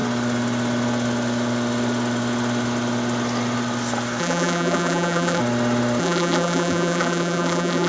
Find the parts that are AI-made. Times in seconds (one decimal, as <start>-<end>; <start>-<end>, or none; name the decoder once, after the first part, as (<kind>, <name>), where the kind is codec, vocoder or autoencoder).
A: 4.2-5.4 (vocoder, BigVGAN v2); 6.0-7.9